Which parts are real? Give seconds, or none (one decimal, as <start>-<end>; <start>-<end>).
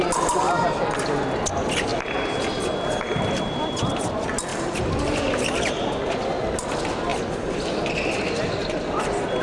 0.0-1.9; 3.9-4.5; 6.1-7.1; 7.8-9.4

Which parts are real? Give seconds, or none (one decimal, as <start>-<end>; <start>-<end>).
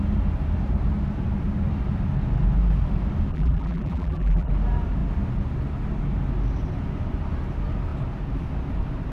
0.0-3.3; 4.5-9.1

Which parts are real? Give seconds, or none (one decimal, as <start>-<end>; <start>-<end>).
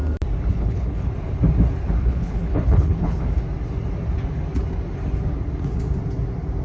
0.0-0.5; 1.1-2.0; 3.2-6.6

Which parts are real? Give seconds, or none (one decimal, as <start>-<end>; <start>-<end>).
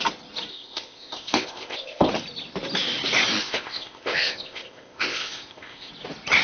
0.0-0.5; 2.1-3.4; 5.9-6.4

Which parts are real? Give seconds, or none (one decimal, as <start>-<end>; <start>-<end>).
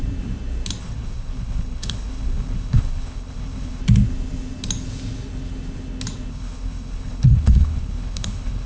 0.0-0.8; 3.8-6.3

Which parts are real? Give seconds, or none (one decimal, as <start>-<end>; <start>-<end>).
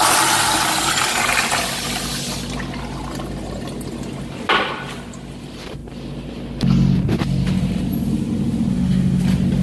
0.0-8.7; 9.2-9.6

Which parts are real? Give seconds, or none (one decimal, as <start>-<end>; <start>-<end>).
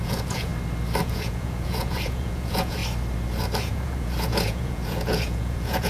0.5-1.0; 2.8-3.6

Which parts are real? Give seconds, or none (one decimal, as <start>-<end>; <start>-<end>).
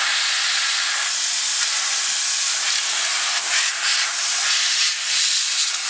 0.0-1.5; 2.0-3.9; 5.3-5.9